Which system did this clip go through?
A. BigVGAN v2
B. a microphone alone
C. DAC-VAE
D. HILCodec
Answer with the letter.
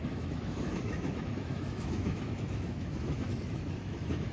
C